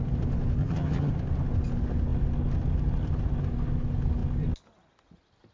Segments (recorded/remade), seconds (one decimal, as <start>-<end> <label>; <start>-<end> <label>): 0.0-0.6 recorded; 0.6-1.1 remade; 1.1-5.5 recorded